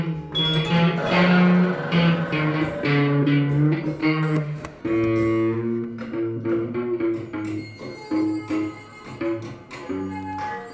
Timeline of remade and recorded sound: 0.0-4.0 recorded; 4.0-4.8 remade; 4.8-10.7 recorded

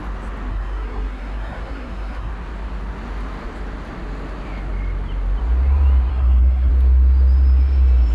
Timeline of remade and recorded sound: 0.0-0.5 recorded; 0.5-2.3 remade; 2.3-6.1 recorded; 6.1-6.7 remade; 6.7-8.1 recorded

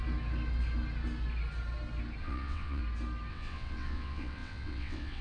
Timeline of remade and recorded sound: 0.0-2.2 recorded; 2.2-2.8 remade; 2.8-3.3 recorded; 3.3-5.2 remade